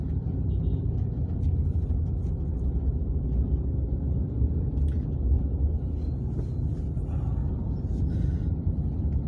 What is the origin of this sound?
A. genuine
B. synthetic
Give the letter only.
A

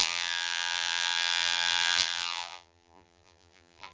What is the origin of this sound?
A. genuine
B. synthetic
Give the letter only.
B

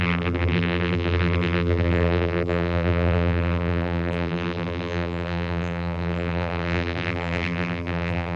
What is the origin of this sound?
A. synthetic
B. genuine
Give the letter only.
A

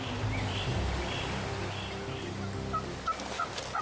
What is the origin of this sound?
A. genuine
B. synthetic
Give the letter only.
A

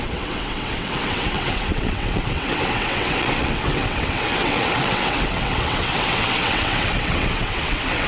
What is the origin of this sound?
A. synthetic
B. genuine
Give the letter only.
A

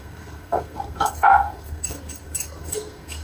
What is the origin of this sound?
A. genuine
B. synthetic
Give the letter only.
B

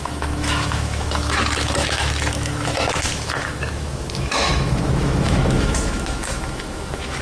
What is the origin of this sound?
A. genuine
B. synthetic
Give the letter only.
B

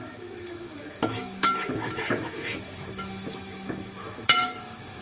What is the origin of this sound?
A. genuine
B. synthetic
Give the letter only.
B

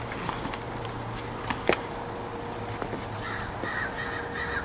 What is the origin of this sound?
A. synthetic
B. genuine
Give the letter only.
B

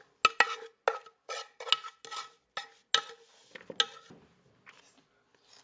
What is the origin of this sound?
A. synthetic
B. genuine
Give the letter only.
B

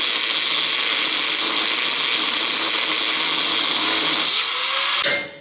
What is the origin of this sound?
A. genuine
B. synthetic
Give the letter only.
A